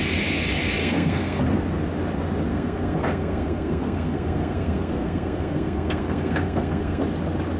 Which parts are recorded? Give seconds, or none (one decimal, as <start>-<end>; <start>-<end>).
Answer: 0.0-0.8; 1.4-2.5; 7.0-7.6